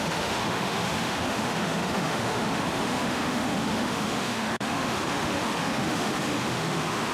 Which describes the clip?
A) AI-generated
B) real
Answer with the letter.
A